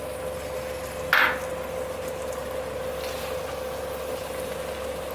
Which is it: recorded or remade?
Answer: recorded